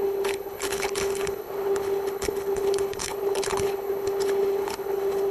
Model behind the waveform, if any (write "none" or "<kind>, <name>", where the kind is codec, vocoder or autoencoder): codec, HILCodec